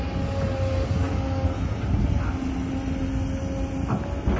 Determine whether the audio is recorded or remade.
recorded